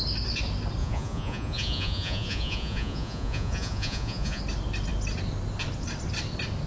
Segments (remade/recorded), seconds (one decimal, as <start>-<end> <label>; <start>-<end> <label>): 0.0-0.8 recorded; 0.8-4.4 remade; 4.4-6.7 recorded